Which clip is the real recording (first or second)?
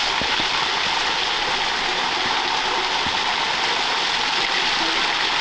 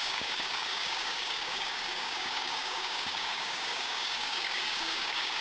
first